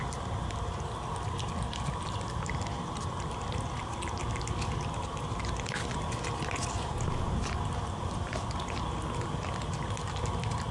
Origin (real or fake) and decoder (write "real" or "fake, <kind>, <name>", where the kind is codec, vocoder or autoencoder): real